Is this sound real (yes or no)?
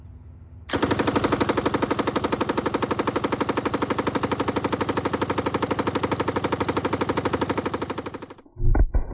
yes